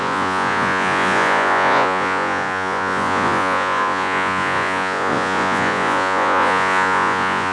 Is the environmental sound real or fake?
fake